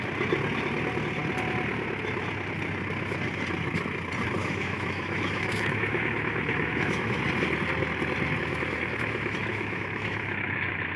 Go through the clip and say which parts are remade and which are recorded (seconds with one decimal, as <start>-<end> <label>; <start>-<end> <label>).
0.0-4.4 recorded; 4.4-7.2 remade; 7.2-8.4 recorded; 8.4-11.0 remade